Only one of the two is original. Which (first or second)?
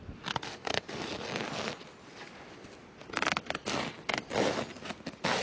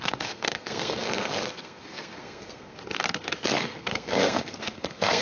first